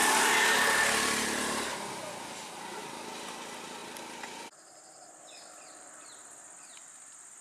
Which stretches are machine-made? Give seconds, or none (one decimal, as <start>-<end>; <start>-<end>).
0.0-0.8; 3.8-5.2